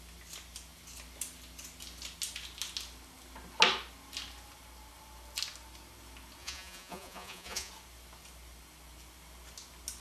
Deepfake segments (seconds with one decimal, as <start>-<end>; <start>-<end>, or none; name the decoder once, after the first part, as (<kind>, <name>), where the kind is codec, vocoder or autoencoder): 6.4-7.7 (vocoder, Vocos)